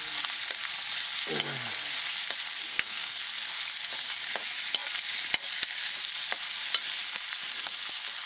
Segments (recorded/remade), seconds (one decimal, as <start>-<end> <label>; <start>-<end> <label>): 0.0-2.7 recorded; 2.7-3.2 remade; 3.2-8.3 recorded